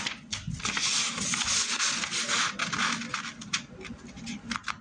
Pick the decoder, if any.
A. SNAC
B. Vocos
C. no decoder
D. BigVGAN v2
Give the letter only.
C